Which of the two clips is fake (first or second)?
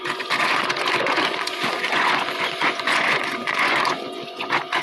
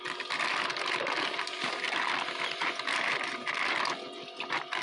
first